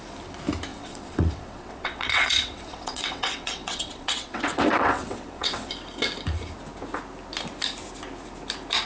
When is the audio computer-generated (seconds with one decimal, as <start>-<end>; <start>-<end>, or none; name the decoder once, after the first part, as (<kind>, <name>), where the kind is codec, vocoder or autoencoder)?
0.7-5.7 (vocoder, WaveNeXt)